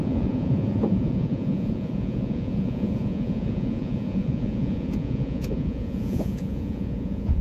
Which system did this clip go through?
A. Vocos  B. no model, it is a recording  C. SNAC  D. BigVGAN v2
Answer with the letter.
A